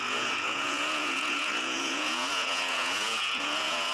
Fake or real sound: fake